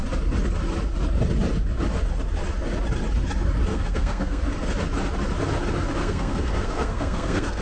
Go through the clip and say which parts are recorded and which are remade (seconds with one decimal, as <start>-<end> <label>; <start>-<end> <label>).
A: 0.0-3.7 recorded; 3.7-4.4 remade; 4.4-6.0 recorded; 6.0-7.6 remade

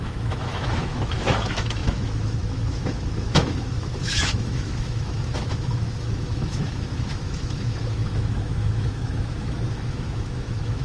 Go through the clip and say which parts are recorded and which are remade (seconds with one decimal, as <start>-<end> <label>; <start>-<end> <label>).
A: 0.0-10.8 remade

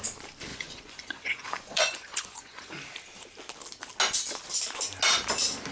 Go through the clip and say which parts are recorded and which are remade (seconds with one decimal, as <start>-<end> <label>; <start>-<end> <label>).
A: 0.0-0.5 recorded; 0.5-2.7 remade; 2.7-5.7 recorded